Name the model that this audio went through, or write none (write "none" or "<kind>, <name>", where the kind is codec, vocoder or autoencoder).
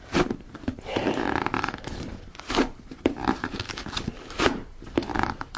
vocoder, BigVGAN v2